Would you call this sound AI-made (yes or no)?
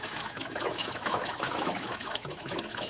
yes